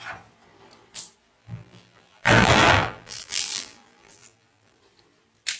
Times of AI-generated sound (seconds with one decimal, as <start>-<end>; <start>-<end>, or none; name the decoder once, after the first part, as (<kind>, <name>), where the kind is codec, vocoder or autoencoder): 1.4-4.8 (vocoder, BigVGAN v2)

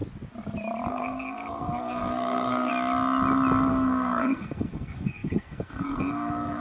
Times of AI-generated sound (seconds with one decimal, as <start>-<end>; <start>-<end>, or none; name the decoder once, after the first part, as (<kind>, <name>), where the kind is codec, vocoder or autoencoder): 0.9-2.7 (codec, SNAC); 3.7-6.6

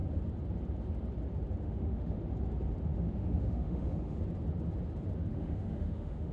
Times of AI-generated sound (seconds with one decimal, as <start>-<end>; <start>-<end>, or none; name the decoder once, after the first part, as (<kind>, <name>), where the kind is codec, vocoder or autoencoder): 1.6-2.2 (autoencoder, DAC-VAE); 2.9-4.2; 5.3-6.3

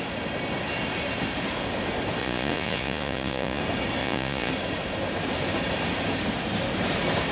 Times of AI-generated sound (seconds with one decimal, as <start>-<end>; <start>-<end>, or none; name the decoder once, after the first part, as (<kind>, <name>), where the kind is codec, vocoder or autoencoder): 2.2-3.6 (vocoder, Vocos); 4.0-4.5